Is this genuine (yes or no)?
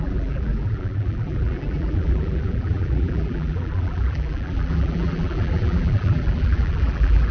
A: no